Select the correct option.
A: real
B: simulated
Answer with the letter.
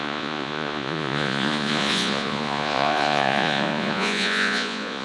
B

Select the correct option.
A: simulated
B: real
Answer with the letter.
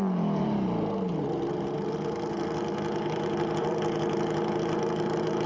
B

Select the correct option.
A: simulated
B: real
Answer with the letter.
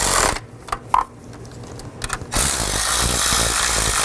B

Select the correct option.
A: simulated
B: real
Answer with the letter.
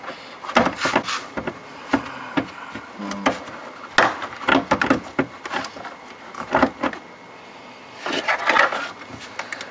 B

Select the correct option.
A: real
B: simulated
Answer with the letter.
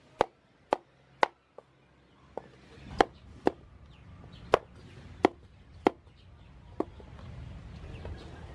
A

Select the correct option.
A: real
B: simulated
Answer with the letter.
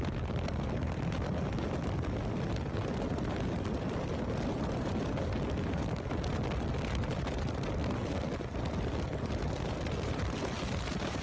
A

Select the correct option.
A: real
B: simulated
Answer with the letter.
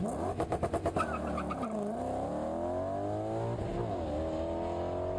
A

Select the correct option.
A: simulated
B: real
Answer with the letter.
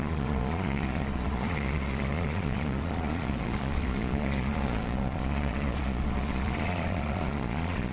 A